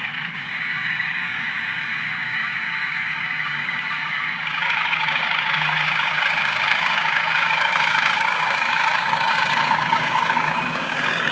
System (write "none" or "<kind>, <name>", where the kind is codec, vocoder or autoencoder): codec, DAC